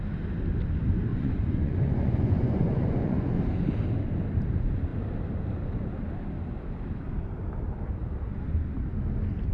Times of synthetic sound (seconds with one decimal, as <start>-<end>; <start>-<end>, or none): 1.1-3.4